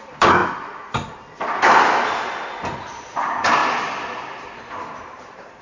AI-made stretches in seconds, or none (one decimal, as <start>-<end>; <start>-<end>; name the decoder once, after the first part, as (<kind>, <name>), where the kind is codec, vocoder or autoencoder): 0.0-0.4 (vocoder, BigVGAN v2); 2.8-3.6; 4.9-5.6